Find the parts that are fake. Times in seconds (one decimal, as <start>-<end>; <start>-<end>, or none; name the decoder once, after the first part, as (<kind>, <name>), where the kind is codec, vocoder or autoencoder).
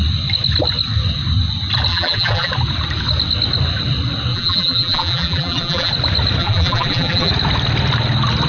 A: 1.9-2.5 (vocoder, BigVGAN v2); 4.3-5.9; 6.4-7.3